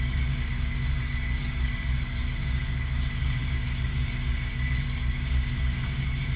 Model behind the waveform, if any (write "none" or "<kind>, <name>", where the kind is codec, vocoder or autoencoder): codec, DAC